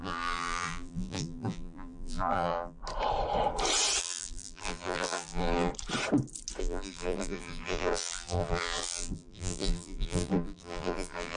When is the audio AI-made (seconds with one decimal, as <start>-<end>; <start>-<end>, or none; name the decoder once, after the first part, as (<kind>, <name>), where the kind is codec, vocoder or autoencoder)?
0.0-2.8 (vocoder, BigVGAN v2); 4.0-5.7; 6.6-11.4

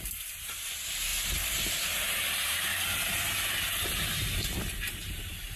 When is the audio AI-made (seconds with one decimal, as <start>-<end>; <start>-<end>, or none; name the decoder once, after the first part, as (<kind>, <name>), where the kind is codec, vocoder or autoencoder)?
0.0-1.1 (vocoder, BigVGAN v2); 1.7-2.7; 4.8-5.6

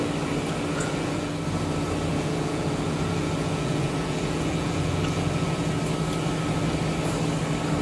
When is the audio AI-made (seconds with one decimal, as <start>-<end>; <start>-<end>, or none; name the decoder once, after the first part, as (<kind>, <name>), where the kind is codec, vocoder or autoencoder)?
0.7-1.3 (vocoder, Vocos); 2.1-5.7